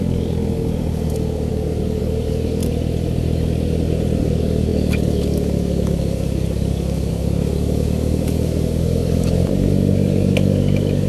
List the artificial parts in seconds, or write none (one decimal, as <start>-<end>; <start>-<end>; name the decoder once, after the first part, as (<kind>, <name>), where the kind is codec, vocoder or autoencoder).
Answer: 0.0-2.6 (codec, DAC); 4.2-11.1